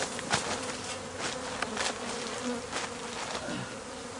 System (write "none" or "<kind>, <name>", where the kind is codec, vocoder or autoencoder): none